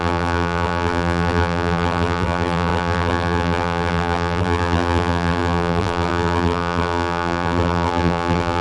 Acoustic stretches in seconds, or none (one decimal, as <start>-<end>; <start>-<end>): none